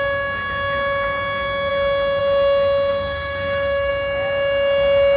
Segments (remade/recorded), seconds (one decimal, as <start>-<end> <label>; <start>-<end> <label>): 0.0-2.9 recorded; 2.9-3.9 remade; 3.9-5.2 recorded